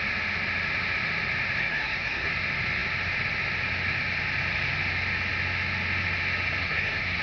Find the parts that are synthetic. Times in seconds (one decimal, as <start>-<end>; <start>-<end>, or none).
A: 1.6-2.3; 6.6-7.2